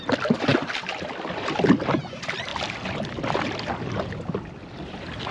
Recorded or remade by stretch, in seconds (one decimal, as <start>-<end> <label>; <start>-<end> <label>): 0.0-2.5 remade; 2.5-4.3 recorded; 4.3-5.3 remade